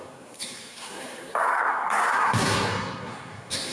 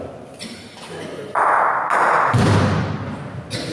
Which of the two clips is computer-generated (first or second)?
first